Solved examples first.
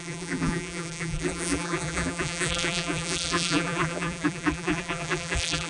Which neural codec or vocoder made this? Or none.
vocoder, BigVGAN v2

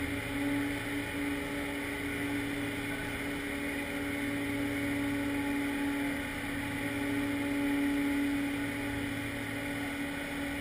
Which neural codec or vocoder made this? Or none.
none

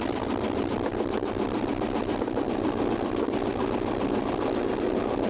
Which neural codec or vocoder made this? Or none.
none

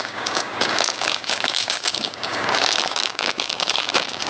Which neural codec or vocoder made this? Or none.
codec, DAC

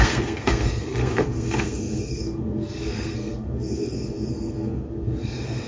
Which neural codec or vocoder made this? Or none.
codec, SNAC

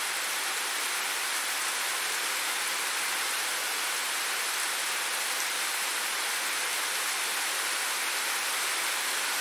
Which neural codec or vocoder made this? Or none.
none